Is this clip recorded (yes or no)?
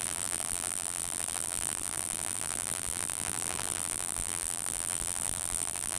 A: no